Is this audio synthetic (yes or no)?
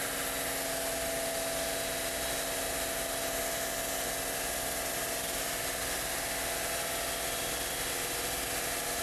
no